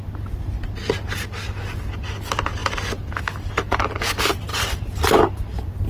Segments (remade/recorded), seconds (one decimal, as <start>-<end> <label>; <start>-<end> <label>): 0.0-2.6 recorded; 2.6-3.2 remade; 3.2-5.9 recorded